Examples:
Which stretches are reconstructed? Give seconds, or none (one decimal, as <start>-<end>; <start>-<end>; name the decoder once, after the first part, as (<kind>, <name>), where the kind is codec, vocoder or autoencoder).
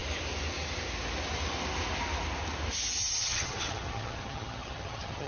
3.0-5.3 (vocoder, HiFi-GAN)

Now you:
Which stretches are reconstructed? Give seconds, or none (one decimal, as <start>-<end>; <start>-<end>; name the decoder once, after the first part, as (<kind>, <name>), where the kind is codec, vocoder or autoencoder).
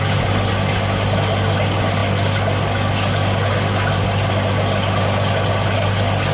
none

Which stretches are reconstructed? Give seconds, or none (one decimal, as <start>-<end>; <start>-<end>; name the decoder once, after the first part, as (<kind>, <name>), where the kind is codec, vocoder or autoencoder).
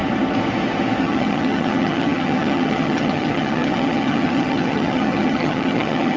1.0-6.2 (vocoder, HiFi-GAN)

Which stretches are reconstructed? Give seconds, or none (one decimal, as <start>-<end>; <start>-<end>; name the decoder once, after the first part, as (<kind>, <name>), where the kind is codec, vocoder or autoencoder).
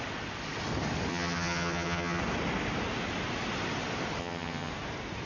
1.1-2.2 (vocoder, HiFi-GAN); 4.2-4.7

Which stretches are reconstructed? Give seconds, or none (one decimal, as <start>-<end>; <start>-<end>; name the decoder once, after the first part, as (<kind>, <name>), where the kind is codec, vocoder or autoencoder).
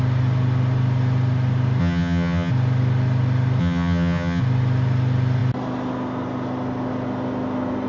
1.8-2.5 (vocoder, HiFi-GAN); 3.6-4.4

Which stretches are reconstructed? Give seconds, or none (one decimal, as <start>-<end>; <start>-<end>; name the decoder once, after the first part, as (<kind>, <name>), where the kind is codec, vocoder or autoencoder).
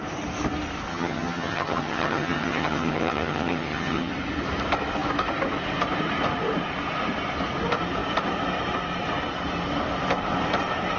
0.9-4.1 (vocoder, HiFi-GAN)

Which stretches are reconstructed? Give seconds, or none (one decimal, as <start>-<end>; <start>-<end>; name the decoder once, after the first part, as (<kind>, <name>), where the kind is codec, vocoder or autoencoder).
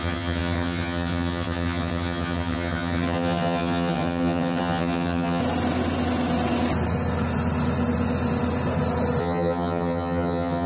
0.0-5.4 (vocoder, HiFi-GAN); 9.2-10.7